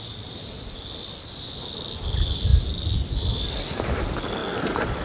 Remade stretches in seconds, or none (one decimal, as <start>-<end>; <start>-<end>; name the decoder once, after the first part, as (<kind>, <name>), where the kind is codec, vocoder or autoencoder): none